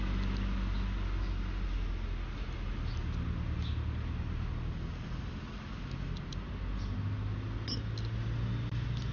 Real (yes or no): yes